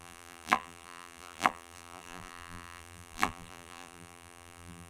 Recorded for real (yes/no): no